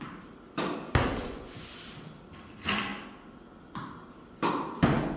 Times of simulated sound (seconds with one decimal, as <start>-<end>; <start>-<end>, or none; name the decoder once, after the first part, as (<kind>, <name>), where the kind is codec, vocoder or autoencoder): 1.2-1.8 (vocoder, Vocos)

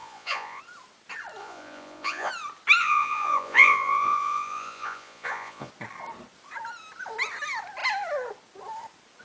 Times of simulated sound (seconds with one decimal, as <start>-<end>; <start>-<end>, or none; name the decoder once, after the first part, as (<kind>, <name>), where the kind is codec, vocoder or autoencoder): 0.0-0.6 (vocoder, Vocos); 1.4-2.3; 2.8-5.7

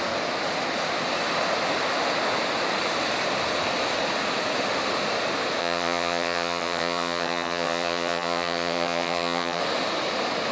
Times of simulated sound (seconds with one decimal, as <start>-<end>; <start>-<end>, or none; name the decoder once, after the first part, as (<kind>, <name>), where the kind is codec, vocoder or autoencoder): 5.6-9.6 (vocoder, HiFi-GAN)

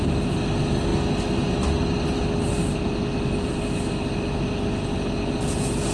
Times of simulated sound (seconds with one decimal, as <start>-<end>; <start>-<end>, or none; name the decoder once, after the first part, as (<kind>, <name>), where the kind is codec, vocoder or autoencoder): none

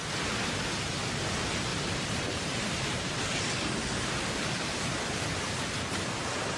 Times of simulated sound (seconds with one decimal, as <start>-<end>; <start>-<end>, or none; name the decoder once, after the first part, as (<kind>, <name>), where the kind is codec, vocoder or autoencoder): 1.7-5.7 (vocoder, BigVGAN v2)